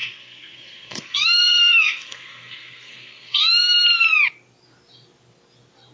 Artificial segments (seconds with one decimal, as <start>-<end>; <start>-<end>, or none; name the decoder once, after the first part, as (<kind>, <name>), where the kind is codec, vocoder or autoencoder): 0.0-3.5 (codec, SNAC)